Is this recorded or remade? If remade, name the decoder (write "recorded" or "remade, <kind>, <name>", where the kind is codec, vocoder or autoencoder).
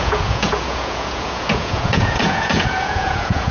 remade, vocoder, Vocos